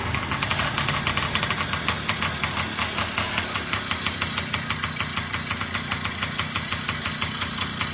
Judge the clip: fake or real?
real